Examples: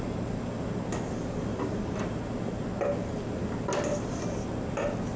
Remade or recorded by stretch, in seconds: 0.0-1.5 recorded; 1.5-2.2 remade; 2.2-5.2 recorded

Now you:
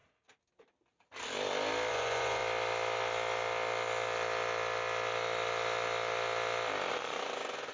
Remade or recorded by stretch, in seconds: 0.0-1.9 recorded; 1.9-2.4 remade; 2.4-6.9 recorded; 6.9-7.7 remade

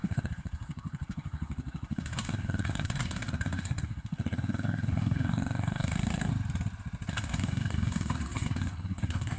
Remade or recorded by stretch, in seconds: 0.0-6.3 remade; 6.3-7.1 recorded; 7.1-9.4 remade